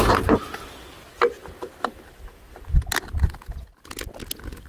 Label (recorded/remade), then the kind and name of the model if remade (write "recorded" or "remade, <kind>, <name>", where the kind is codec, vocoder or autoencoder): recorded